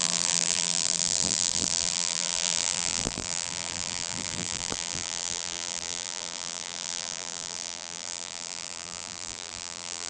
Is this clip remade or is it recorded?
remade